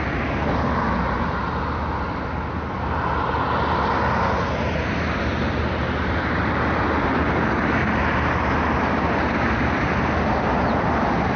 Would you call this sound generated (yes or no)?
no